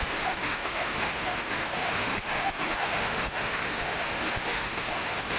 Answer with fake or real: fake